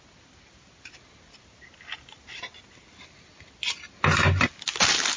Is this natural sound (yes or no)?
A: yes